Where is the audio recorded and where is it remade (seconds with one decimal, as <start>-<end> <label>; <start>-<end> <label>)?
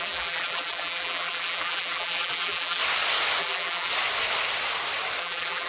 0.0-2.8 remade; 2.8-3.4 recorded; 3.4-3.9 remade; 3.9-5.2 recorded; 5.2-5.7 remade